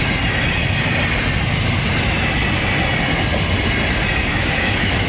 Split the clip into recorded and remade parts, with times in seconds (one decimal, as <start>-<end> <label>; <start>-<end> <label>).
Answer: 0.0-4.3 recorded; 4.3-5.1 remade